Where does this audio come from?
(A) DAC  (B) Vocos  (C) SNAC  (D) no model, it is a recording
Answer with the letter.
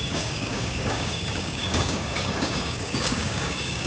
A